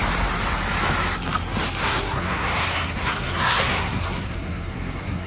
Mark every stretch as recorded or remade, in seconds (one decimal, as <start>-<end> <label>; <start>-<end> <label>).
0.0-1.8 recorded; 1.8-5.3 remade

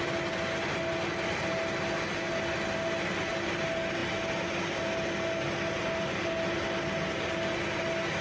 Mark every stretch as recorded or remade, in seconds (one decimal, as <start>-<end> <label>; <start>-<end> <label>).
0.0-8.2 recorded

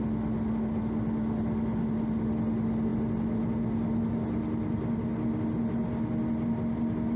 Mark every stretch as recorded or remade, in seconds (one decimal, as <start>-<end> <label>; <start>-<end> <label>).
0.0-7.2 recorded

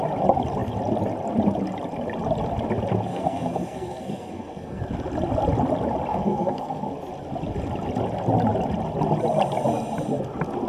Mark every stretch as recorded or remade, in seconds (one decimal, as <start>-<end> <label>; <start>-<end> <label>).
0.0-3.1 recorded; 3.1-4.8 remade; 4.8-6.1 recorded; 6.1-6.8 remade; 6.8-10.7 recorded

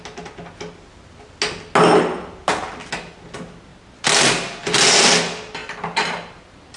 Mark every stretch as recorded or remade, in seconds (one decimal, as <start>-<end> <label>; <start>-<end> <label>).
0.0-6.8 recorded

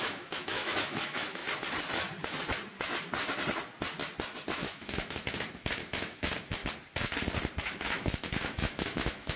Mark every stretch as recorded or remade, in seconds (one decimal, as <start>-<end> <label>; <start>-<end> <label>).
0.0-1.4 remade; 1.4-4.5 recorded; 4.5-6.6 remade; 6.6-7.6 recorded; 7.6-9.4 remade

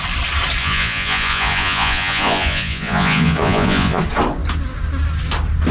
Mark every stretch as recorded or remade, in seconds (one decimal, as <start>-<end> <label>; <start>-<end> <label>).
0.0-0.6 recorded; 0.6-4.0 remade; 4.0-5.7 recorded